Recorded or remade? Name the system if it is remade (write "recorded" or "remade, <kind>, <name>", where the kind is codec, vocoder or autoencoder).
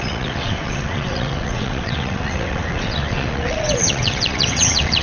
remade, vocoder, WaveNeXt